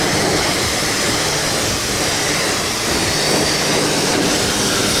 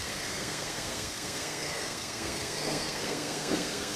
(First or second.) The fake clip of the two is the second